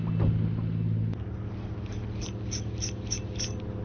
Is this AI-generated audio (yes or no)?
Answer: no